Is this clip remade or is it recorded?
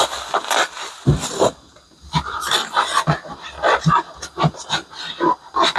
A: recorded